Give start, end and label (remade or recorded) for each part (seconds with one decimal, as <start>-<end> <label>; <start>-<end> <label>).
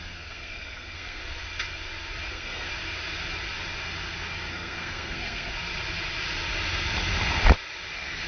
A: 0.0-1.2 remade; 1.2-2.3 recorded; 2.3-2.7 remade; 2.7-4.5 recorded; 4.5-5.5 remade; 5.5-7.9 recorded; 7.9-8.3 remade